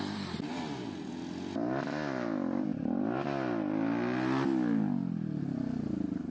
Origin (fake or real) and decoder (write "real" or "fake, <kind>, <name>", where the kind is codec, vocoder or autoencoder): real